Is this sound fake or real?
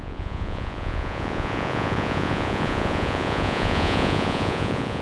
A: fake